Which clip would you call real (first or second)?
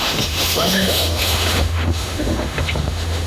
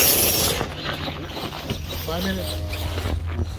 second